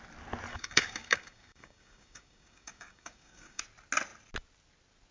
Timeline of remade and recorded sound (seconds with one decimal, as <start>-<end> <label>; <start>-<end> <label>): 0.0-0.5 recorded; 0.5-3.6 remade; 3.6-5.1 recorded